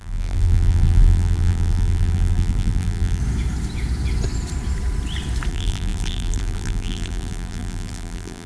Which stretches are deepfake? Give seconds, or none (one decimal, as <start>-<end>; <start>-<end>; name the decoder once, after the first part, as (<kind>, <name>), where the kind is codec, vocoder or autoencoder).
0.0-3.2 (vocoder, BigVGAN v2); 5.5-8.5